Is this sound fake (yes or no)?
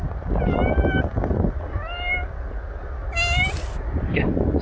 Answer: no